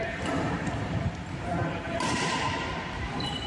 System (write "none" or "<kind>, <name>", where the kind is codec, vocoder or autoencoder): vocoder, BigVGAN v2